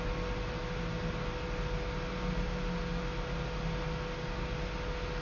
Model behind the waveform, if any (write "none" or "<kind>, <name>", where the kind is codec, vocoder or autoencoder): none